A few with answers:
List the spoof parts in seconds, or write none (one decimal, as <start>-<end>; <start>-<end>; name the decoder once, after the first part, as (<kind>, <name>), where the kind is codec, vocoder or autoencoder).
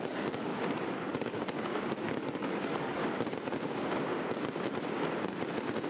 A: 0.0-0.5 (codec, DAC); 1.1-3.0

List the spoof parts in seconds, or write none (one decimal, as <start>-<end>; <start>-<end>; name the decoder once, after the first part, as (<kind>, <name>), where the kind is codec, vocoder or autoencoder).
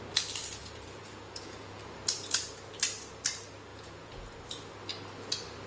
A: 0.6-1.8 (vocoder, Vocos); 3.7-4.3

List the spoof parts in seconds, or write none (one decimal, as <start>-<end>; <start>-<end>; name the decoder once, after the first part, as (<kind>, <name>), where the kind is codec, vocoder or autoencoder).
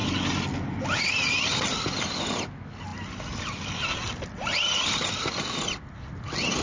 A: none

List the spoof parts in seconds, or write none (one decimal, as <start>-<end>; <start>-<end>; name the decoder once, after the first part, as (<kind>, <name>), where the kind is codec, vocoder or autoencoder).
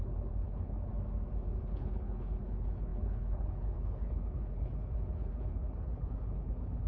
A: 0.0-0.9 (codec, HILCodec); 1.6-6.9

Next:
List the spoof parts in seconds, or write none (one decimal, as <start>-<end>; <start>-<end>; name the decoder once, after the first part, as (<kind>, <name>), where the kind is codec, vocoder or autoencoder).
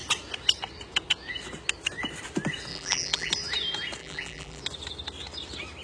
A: 2.7-3.3 (vocoder, BigVGAN v2); 4.0-4.6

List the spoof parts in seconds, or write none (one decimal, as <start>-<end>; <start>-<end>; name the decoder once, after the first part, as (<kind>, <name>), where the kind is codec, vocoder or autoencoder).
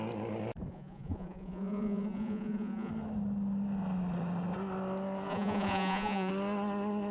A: 0.7-2.9 (vocoder, Vocos); 5.3-6.3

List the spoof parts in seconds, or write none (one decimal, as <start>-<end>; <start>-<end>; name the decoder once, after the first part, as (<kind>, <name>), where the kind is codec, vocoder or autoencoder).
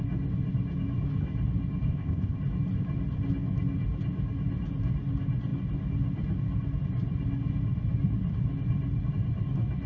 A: 1.9-2.4 (codec, ZipCodec)